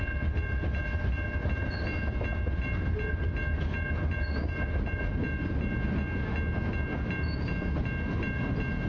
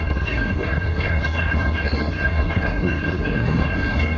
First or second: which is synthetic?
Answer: second